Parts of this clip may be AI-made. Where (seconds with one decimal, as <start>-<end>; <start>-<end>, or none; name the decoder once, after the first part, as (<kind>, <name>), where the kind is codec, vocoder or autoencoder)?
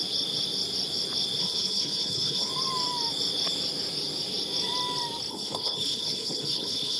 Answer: 1.4-2.5 (codec, HILCodec); 5.3-7.0